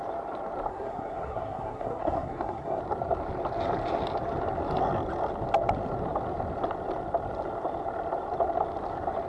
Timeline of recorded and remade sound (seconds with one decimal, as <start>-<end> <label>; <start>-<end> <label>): 0.0-0.7 recorded; 0.7-2.8 remade; 2.8-9.3 recorded